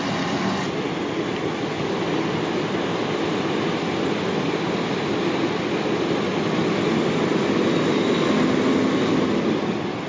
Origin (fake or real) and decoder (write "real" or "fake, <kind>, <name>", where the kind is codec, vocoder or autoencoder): real